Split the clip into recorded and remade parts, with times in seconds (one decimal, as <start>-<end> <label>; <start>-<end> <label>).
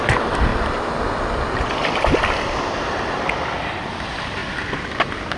0.0-0.5 remade; 0.5-1.6 recorded; 1.6-5.4 remade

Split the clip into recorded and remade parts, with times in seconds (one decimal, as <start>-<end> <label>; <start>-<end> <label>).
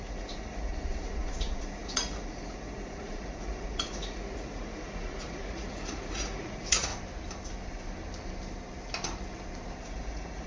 0.0-6.9 remade; 6.9-9.8 recorded; 9.8-10.5 remade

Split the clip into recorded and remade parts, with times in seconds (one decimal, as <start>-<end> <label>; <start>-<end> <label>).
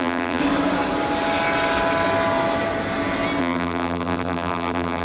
0.0-0.4 remade; 0.4-3.4 recorded; 3.4-5.0 remade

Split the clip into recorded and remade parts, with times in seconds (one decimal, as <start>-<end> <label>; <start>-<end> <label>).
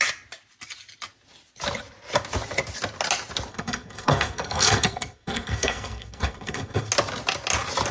0.0-3.5 recorded; 3.5-6.9 remade; 6.9-7.9 recorded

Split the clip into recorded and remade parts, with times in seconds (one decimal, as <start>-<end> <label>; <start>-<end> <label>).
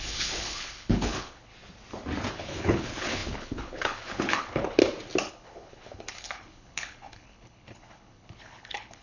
0.0-1.5 remade; 1.5-2.3 recorded; 2.3-4.8 remade; 4.8-5.3 recorded; 5.3-9.0 remade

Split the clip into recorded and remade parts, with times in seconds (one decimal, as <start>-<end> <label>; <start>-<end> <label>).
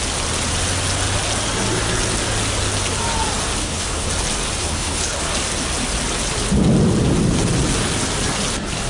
0.0-3.6 recorded; 3.6-4.1 remade; 4.1-4.6 recorded; 4.6-5.2 remade; 5.2-8.9 recorded